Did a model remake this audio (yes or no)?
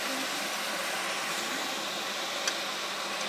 no